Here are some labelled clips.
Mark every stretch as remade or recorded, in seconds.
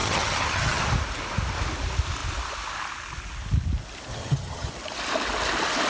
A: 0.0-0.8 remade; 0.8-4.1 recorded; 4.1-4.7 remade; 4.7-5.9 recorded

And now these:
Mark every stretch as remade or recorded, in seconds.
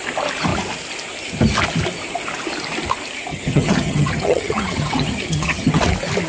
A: 0.0-3.3 recorded; 3.3-5.8 remade; 5.8-6.3 recorded